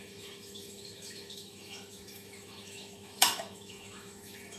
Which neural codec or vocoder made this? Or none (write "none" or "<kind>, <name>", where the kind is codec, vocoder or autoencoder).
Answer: autoencoder, DAC-VAE